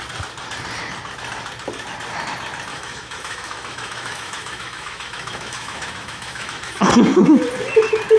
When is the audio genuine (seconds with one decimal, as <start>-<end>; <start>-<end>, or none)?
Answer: 0.0-2.7; 6.9-8.2